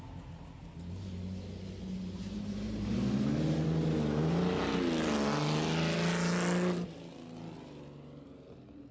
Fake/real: real